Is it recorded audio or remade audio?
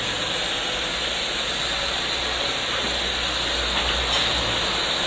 recorded